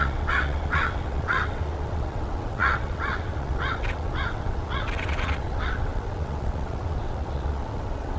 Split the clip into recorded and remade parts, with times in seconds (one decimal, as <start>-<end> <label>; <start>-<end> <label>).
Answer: 0.0-8.2 remade